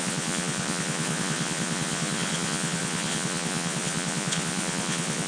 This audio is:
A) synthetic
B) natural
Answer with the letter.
A